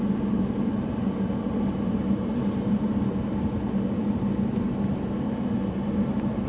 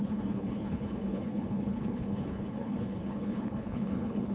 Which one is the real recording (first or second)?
first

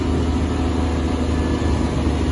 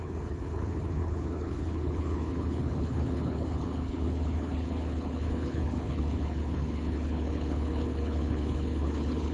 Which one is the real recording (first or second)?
first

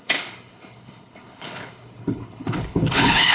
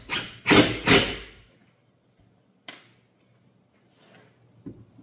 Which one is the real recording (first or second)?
second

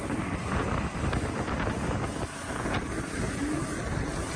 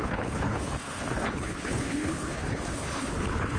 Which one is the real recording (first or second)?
first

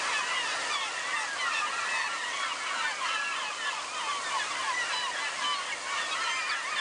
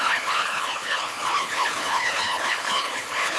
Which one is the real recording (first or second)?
first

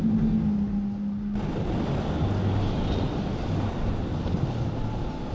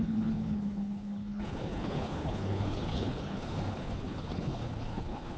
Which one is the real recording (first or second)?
first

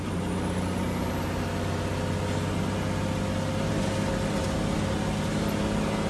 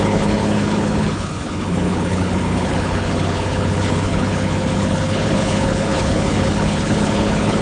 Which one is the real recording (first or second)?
first